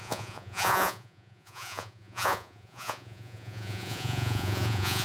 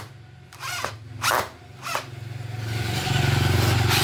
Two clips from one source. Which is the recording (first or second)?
second